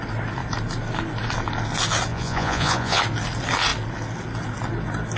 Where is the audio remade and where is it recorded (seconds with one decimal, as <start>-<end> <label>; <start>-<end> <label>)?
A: 0.0-2.1 recorded; 2.1-3.0 remade; 3.0-5.2 recorded

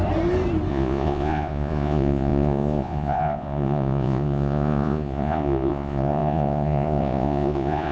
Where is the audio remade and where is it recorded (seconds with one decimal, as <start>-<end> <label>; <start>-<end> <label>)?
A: 0.0-0.7 recorded; 0.7-7.9 remade

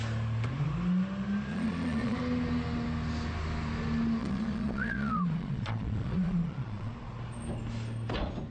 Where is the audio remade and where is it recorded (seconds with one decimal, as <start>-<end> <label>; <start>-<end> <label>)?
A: 0.0-1.5 recorded; 1.5-2.2 remade; 2.2-4.2 recorded; 4.2-6.9 remade; 6.9-8.5 recorded